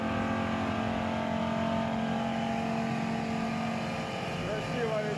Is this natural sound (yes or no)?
yes